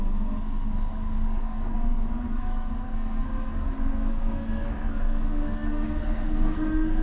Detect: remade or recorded remade